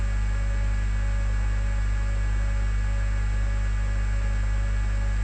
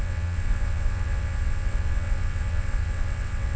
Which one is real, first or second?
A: first